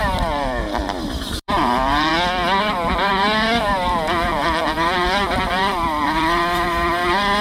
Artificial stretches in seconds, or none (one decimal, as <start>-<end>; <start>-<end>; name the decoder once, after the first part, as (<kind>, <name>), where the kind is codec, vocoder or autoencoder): 0.0-2.1 (vocoder, BigVGAN v2); 2.6-7.4